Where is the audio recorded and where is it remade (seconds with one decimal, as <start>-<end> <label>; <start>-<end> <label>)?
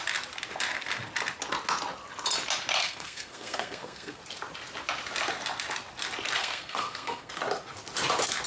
0.0-2.8 recorded; 2.8-4.2 remade; 4.2-6.4 recorded; 6.4-7.3 remade; 7.3-8.5 recorded